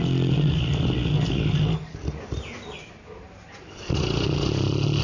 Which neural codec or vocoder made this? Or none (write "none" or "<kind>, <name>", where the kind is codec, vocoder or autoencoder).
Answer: none